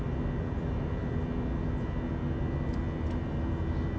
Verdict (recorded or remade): recorded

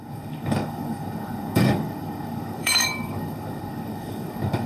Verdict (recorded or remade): remade